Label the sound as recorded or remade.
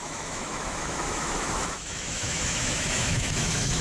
remade